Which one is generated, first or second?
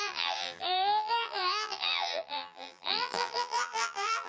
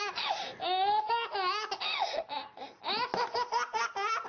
first